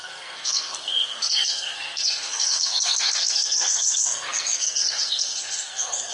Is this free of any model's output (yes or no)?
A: no